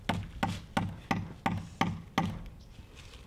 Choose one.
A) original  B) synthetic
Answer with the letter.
A